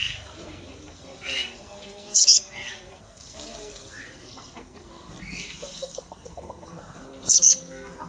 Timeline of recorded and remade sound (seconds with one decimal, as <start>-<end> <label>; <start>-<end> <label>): 0.0-8.1 remade

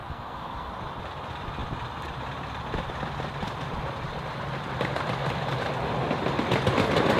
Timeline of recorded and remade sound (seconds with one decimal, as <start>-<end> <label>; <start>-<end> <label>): 0.0-0.7 remade; 0.7-7.2 recorded

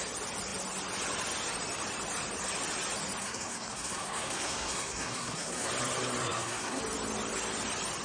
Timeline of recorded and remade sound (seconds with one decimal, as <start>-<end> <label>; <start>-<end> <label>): 0.0-3.2 recorded; 3.2-5.7 remade; 5.7-6.2 recorded; 6.2-6.8 remade; 6.8-8.0 recorded

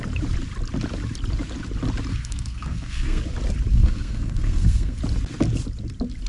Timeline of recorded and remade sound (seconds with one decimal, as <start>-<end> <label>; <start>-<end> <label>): 0.0-2.1 recorded; 2.1-3.2 remade; 3.2-3.7 recorded; 3.7-5.0 remade; 5.0-6.3 recorded

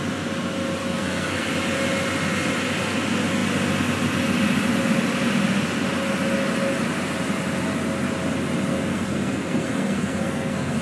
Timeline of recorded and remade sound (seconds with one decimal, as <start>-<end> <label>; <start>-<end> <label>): 0.0-0.8 recorded; 0.8-1.5 remade; 1.5-8.7 recorded; 8.7-10.8 remade

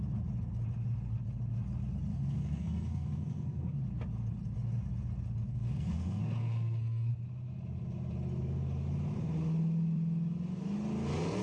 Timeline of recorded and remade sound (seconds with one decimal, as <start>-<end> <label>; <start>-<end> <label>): 0.0-2.1 recorded; 2.1-3.8 remade; 3.8-5.5 recorded; 5.5-7.1 remade; 7.1-11.4 recorded

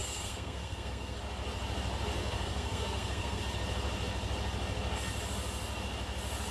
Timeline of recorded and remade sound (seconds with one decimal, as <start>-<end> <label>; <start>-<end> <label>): 0.0-1.2 remade; 1.2-2.2 recorded; 2.2-3.4 remade; 3.4-6.5 recorded

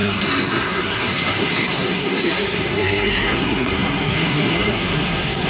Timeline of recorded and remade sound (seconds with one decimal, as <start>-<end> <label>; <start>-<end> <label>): 0.0-5.5 remade